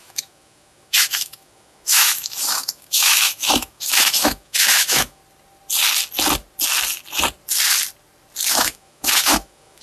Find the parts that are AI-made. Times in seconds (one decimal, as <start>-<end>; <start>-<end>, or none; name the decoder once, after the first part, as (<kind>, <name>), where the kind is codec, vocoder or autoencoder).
0.0-5.2 (autoencoder, DAC-VAE); 8.5-9.8